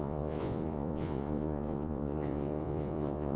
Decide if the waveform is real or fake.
fake